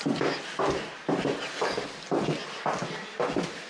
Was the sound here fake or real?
real